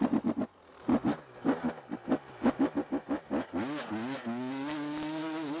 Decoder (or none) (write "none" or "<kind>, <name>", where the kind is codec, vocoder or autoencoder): none